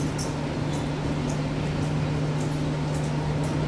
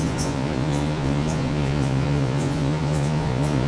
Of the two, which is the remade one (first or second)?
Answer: second